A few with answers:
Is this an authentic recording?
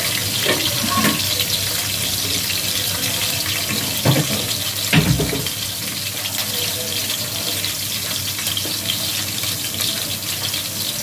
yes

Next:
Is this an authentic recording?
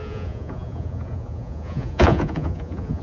no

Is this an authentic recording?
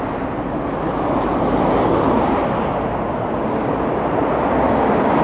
yes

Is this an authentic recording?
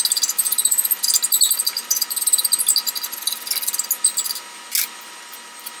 yes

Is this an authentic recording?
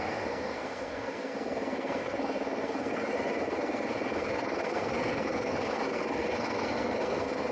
no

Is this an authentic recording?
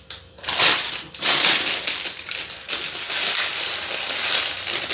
yes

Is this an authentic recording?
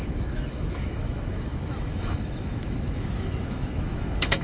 no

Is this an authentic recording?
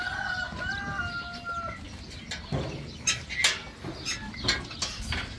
yes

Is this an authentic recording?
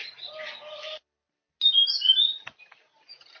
yes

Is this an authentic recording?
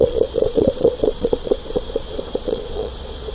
no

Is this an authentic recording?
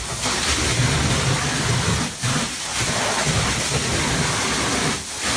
yes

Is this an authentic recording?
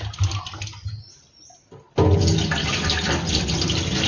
yes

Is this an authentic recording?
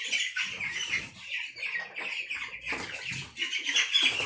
yes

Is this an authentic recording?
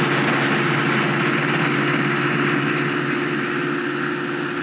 yes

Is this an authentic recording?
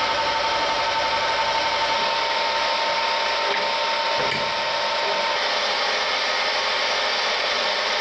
yes